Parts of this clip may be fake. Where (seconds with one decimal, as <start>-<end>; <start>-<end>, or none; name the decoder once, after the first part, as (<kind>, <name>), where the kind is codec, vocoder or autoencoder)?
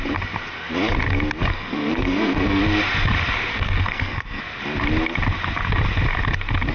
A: 1.5-2.6 (codec, SNAC); 3.5-4.4